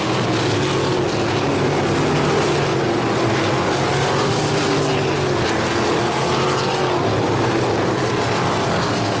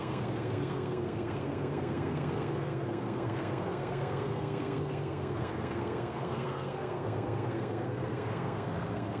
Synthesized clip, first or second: second